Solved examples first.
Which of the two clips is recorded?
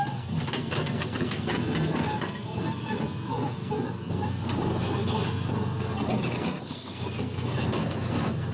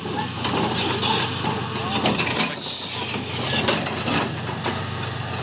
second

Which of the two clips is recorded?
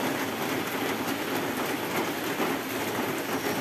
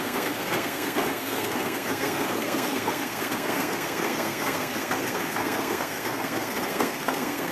first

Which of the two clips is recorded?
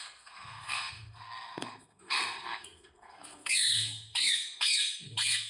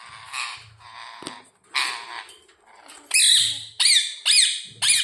second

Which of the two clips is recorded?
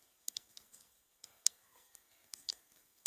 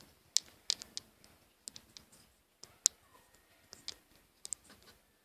second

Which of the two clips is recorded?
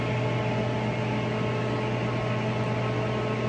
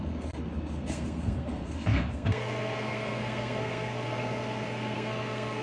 first